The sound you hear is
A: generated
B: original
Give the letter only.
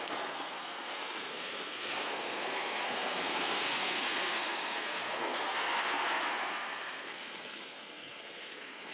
A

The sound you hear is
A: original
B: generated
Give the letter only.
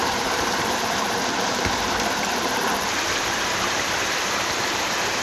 B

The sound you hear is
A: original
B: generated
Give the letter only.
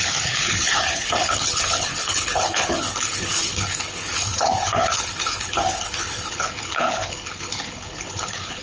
B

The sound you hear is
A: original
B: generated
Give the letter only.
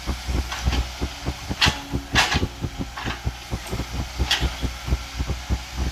A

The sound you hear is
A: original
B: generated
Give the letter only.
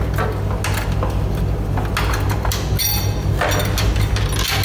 A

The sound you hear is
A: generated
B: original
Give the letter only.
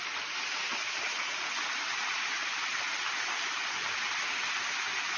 B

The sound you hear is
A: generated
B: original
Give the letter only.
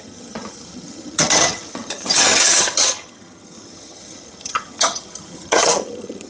A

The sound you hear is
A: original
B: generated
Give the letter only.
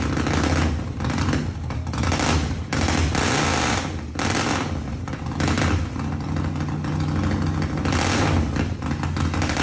A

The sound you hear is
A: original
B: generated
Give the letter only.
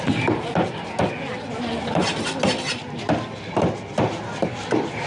A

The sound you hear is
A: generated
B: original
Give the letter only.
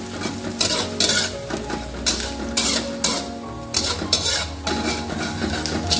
B